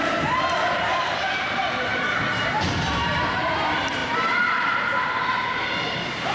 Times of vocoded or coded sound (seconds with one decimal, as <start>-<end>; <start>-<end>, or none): 0.0-6.3

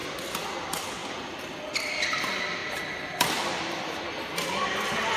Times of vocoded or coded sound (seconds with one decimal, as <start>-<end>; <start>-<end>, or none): none